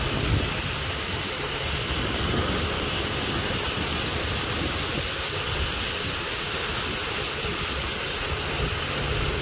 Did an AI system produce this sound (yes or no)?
no